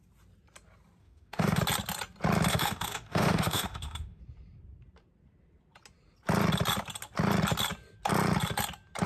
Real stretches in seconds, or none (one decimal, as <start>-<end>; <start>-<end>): 0.0-1.0; 1.6-2.5; 4.2-9.1